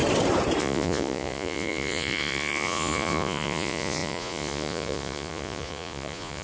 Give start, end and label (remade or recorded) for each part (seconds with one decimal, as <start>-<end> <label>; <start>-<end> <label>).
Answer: 0.0-0.6 recorded; 0.6-6.4 remade